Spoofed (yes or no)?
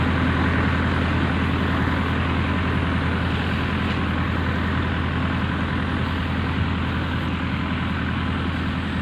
no